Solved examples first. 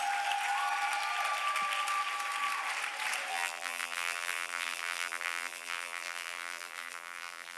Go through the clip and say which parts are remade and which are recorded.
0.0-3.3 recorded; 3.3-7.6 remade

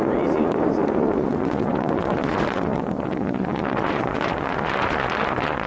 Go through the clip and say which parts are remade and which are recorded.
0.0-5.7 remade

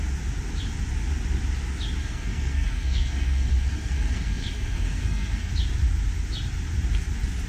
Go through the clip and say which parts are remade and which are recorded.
0.0-2.0 recorded; 2.0-5.5 remade; 5.5-7.5 recorded

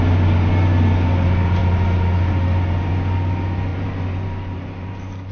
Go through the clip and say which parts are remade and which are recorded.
0.0-3.7 recorded; 3.7-5.3 remade

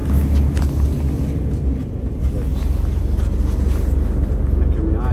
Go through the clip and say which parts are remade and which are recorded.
0.0-2.5 recorded; 2.5-3.0 remade; 3.0-5.1 recorded

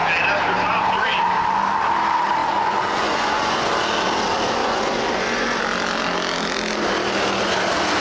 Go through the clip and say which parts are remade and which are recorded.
0.0-2.4 recorded; 2.4-3.7 remade; 3.7-4.6 recorded; 4.6-5.6 remade; 5.6-8.0 recorded

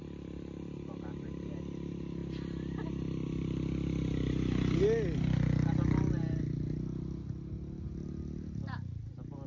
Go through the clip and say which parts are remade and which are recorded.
0.0-9.5 recorded

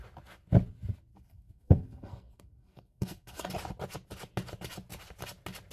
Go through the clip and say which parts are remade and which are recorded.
0.0-1.1 recorded; 1.1-3.5 remade; 3.5-5.7 recorded